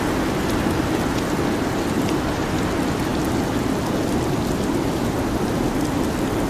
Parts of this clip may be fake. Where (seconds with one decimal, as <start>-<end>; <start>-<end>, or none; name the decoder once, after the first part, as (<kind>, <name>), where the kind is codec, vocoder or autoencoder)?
none